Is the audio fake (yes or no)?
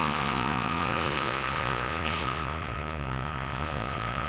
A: yes